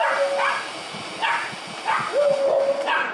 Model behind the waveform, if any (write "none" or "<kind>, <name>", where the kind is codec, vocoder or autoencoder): none